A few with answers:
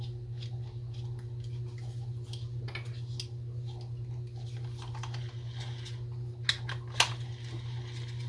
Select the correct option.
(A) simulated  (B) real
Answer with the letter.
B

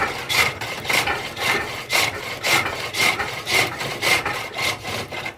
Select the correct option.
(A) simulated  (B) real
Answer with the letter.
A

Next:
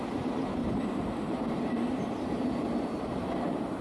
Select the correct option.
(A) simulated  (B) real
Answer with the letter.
A